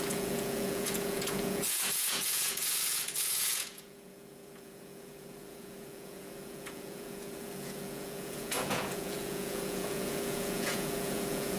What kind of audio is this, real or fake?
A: fake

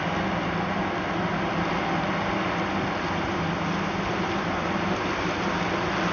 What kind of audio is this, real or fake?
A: real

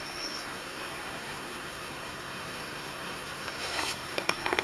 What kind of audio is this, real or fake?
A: fake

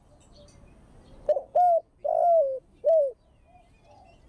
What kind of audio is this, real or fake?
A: real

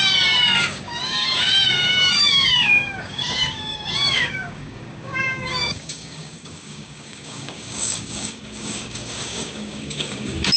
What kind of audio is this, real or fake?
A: fake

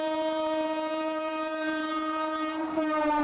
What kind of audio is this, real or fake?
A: fake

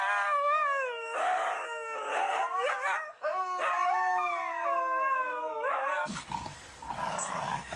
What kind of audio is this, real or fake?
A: fake